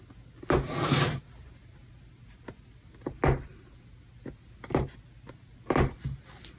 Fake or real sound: real